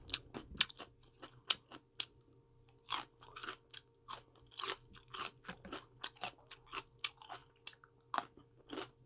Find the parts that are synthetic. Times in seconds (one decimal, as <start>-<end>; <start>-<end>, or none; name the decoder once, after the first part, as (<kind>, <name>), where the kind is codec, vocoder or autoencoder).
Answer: none